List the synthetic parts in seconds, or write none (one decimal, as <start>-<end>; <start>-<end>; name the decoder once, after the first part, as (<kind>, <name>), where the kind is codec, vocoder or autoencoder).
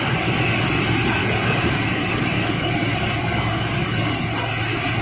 1.2-4.2 (codec, DAC)